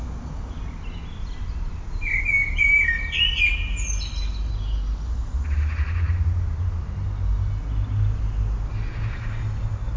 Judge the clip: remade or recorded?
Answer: recorded